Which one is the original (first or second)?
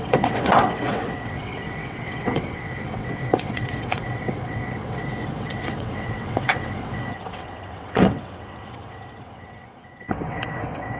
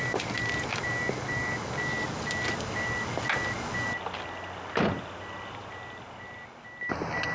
second